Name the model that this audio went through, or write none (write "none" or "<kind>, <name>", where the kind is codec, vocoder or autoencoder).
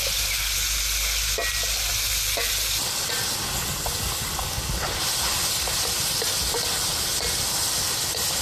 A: none